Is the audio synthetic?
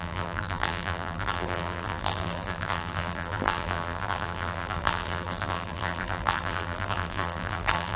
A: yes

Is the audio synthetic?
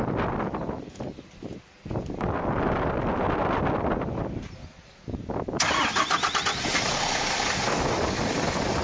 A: no